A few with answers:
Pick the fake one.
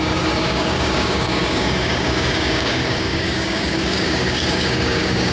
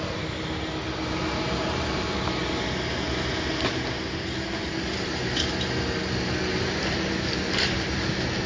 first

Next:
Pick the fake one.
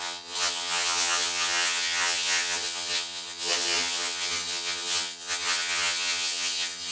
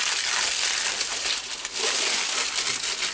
first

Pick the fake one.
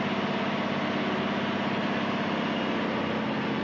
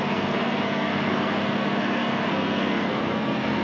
second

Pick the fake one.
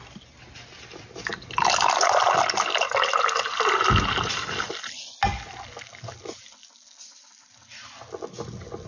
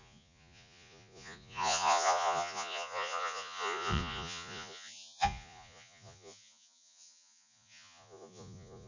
second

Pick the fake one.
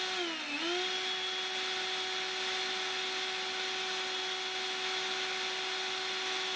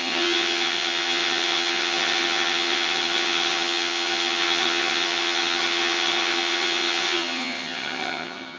second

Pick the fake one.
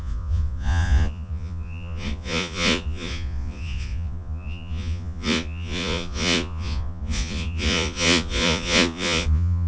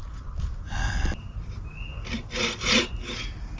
first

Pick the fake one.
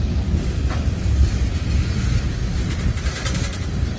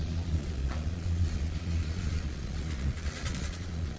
second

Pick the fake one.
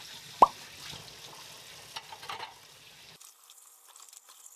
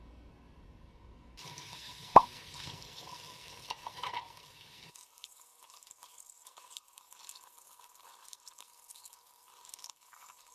second